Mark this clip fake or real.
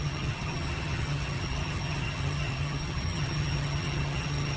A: fake